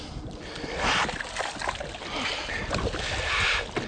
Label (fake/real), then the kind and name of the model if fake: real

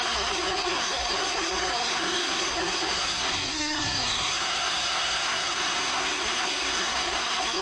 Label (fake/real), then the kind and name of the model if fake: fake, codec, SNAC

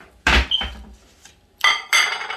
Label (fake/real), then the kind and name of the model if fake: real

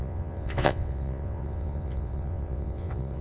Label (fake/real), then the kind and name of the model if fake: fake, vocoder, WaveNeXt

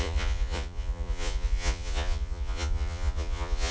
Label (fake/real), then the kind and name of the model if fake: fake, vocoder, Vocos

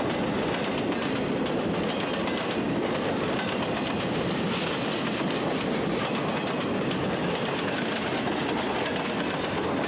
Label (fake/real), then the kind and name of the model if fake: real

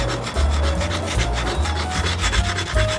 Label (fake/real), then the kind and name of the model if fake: real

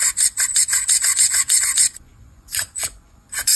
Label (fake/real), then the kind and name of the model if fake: fake, vocoder, Vocos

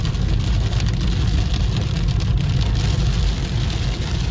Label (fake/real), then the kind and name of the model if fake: real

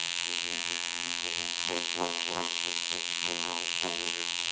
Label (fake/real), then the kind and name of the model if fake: fake, vocoder, BigVGAN v2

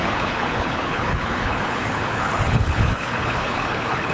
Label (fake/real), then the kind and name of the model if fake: fake, codec, HILCodec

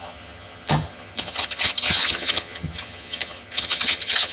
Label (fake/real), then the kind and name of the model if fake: fake, vocoder, HiFi-GAN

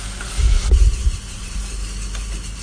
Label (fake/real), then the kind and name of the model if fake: real